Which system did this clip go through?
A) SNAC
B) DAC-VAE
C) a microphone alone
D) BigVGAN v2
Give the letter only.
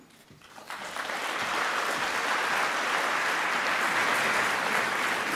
C